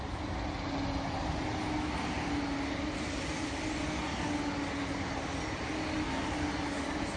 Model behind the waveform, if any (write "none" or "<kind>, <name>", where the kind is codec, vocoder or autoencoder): none